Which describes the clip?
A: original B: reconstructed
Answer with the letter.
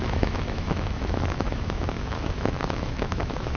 B